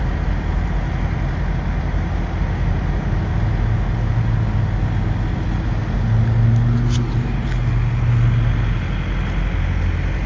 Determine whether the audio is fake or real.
real